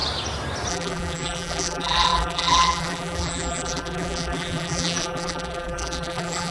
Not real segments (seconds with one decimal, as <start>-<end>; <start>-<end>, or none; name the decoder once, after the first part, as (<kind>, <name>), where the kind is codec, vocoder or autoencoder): 0.7-6.5 (vocoder, BigVGAN v2)